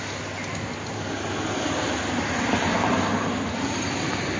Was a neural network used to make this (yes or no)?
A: no